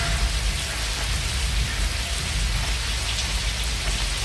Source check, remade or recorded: recorded